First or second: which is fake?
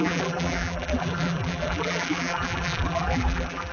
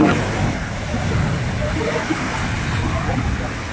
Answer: first